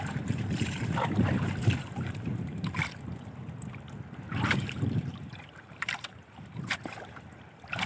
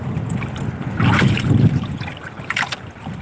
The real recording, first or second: second